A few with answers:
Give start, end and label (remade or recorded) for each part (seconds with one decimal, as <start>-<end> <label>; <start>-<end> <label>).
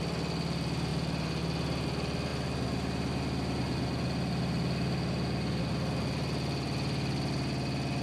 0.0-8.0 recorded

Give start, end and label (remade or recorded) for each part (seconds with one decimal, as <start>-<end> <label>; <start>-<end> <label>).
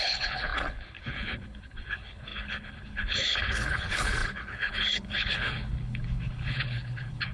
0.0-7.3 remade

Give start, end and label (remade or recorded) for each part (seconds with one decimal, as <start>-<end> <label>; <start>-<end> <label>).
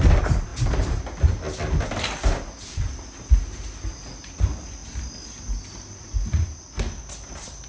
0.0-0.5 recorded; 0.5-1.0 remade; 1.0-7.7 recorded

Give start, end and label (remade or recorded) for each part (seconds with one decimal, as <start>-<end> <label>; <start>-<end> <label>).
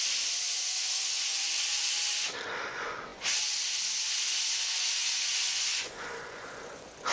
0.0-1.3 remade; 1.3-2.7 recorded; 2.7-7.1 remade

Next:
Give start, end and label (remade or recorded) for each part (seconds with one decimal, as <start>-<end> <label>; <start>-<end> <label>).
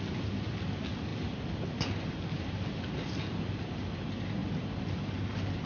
0.0-5.7 recorded